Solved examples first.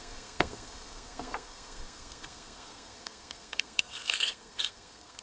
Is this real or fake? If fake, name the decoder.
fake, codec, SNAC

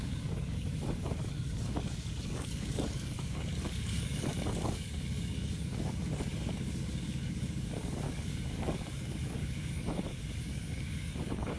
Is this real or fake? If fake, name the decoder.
fake, codec, DAC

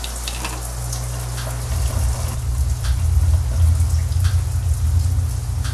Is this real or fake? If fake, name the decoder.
real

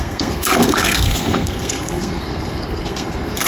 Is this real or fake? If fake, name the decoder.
fake, codec, SNAC